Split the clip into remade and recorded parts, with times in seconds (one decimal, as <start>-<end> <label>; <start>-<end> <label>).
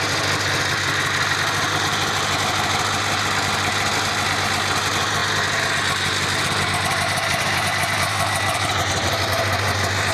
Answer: 0.0-10.1 recorded